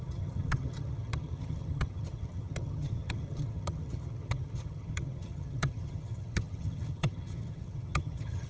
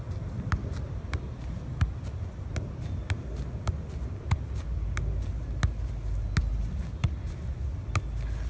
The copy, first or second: first